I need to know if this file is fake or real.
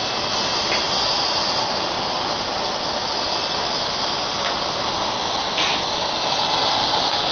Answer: real